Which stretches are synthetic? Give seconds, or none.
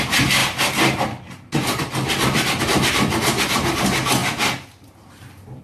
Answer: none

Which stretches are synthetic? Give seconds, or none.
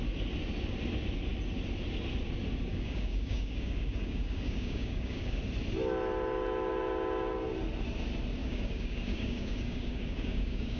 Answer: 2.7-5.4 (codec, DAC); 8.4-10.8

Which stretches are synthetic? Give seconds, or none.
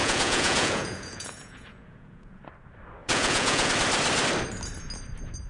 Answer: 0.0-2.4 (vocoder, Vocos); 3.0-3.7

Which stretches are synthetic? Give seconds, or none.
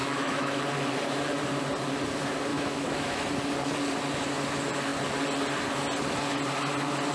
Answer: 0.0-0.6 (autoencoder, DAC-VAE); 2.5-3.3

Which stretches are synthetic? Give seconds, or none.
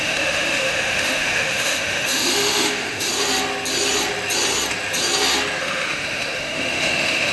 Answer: 0.0-3.1 (autoencoder, DAC-VAE); 5.6-7.3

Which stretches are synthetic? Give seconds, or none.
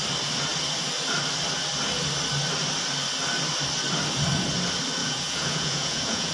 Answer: 5.0-6.3 (vocoder, Vocos)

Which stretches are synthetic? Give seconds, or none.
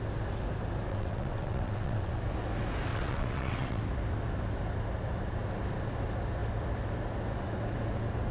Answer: 0.9-2.2 (vocoder, WaveNeXt); 2.9-3.8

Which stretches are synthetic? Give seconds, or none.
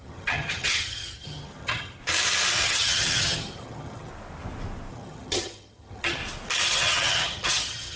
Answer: 0.0-2.0 (vocoder, HiFi-GAN); 2.6-4.1; 4.9-6.2; 6.7-8.0